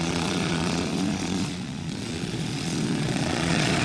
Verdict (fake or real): fake